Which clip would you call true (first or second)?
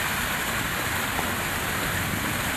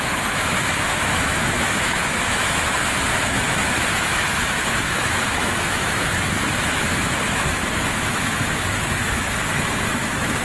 first